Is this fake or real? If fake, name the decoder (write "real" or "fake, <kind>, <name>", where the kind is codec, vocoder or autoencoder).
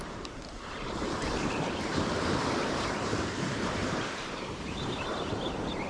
fake, vocoder, BigVGAN v2